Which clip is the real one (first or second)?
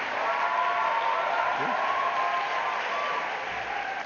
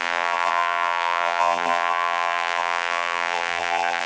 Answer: first